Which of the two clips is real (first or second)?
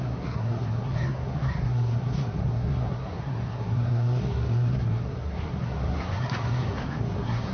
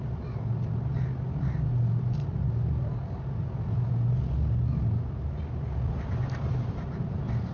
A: second